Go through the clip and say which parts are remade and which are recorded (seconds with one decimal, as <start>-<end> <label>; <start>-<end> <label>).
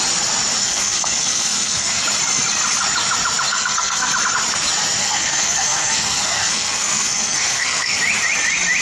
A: 0.0-0.6 recorded; 0.6-2.0 remade; 2.0-3.5 recorded; 3.5-4.1 remade; 4.1-5.0 recorded; 5.0-8.0 remade; 8.0-8.8 recorded